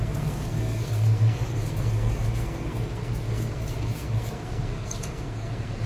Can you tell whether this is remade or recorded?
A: remade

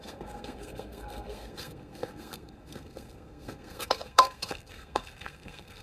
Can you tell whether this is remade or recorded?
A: remade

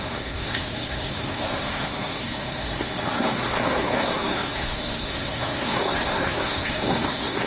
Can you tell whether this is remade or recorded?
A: remade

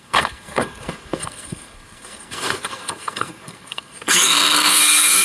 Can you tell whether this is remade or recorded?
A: remade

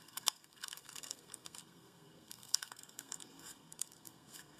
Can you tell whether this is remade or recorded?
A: remade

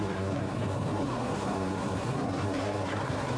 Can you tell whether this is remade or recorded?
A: remade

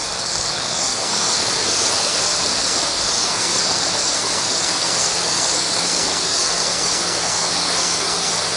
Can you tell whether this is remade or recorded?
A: remade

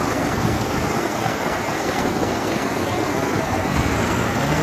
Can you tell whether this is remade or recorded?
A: remade